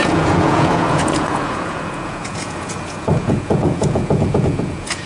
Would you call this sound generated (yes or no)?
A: yes